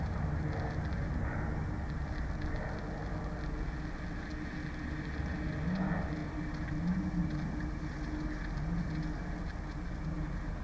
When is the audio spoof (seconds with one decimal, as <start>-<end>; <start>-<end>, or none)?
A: none